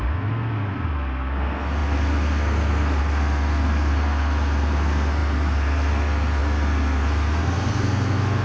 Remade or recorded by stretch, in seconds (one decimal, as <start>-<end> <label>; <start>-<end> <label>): 0.0-8.4 remade